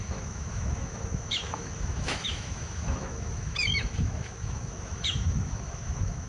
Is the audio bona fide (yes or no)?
no